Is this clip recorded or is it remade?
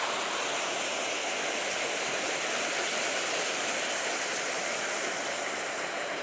recorded